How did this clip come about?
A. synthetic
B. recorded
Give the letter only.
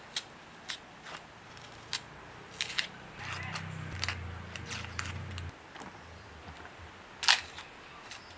B